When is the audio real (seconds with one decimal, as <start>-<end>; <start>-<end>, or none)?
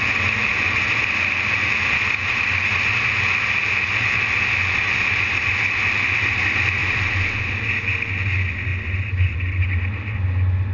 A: 0.0-6.8; 7.5-10.7